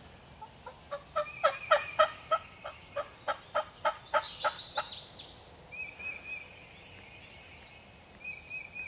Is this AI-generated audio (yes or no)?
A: no